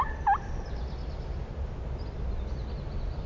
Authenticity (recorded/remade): recorded